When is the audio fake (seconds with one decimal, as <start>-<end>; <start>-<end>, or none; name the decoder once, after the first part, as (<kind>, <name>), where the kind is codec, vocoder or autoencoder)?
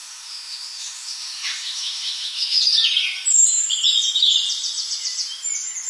0.0-2.6 (autoencoder, DAC-VAE)